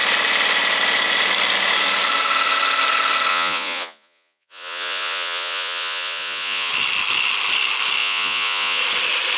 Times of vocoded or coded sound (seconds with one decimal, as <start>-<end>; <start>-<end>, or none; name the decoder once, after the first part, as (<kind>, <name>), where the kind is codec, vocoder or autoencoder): 3.3-6.7 (vocoder, Vocos); 8.0-8.8